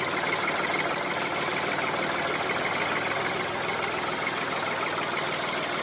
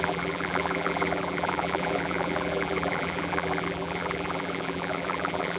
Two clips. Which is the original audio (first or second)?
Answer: first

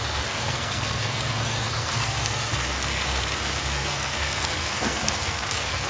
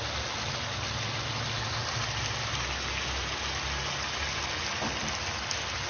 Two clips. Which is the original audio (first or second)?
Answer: second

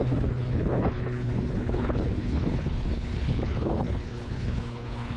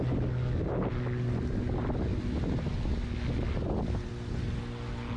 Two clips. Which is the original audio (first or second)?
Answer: second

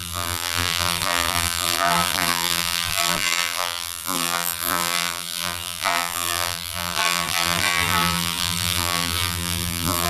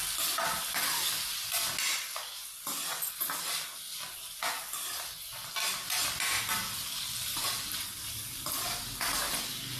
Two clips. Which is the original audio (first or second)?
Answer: second